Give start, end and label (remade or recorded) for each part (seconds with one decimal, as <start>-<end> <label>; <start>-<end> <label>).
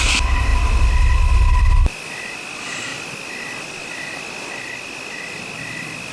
0.0-6.1 recorded